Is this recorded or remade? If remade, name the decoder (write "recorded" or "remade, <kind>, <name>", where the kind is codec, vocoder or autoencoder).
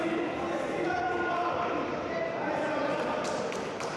recorded